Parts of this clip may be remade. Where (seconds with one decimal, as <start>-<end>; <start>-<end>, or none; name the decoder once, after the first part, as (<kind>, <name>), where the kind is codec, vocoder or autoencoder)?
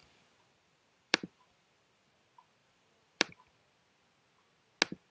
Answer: 0.0-2.1 (vocoder, BigVGAN v2); 2.6-3.3